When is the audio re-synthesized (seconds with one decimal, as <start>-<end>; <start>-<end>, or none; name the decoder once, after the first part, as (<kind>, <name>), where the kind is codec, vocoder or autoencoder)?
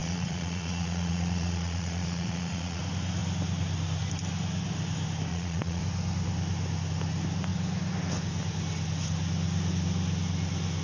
0.0-2.8 (vocoder, Vocos); 5.3-5.8